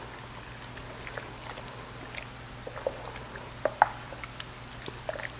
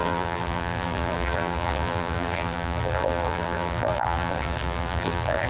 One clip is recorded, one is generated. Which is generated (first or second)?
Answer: second